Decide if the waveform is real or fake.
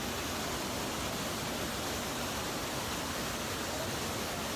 real